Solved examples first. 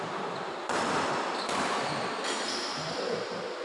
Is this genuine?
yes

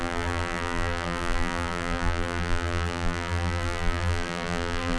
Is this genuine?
no